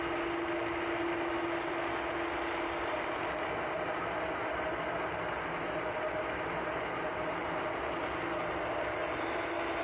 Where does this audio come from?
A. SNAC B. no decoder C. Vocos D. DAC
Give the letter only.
B